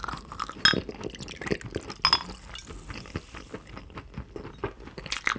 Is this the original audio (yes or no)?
yes